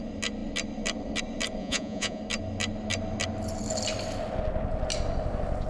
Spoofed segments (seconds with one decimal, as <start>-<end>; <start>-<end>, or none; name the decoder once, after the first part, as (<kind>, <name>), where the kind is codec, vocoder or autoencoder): 1.6-2.2 (vocoder, Vocos)